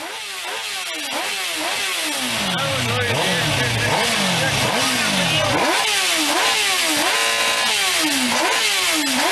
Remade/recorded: recorded